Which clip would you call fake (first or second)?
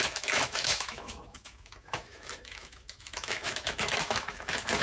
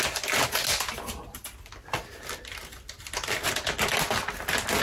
first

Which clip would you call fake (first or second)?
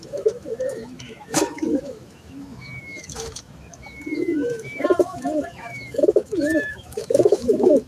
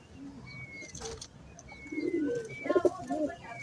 first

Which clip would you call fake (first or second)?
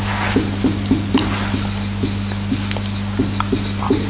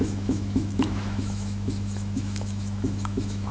second